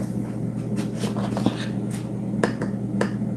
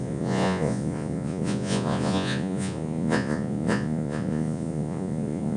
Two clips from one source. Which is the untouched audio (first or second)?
first